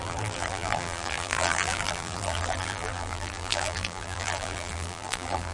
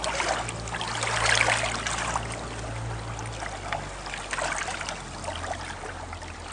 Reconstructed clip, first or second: first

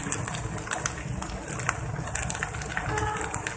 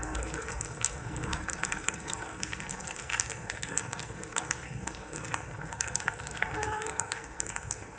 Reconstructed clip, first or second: second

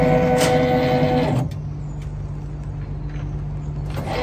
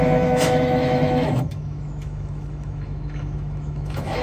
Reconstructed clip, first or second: second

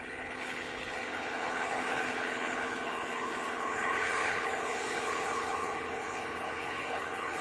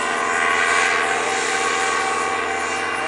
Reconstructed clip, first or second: first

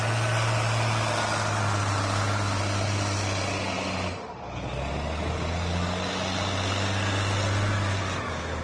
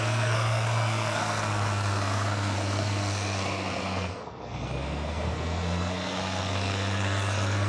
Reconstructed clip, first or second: second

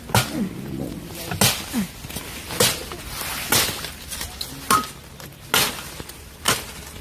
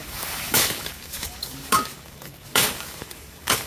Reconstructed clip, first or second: second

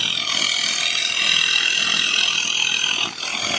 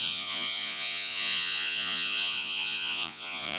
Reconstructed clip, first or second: second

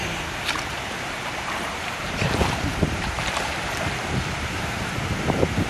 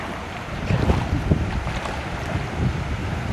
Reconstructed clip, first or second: first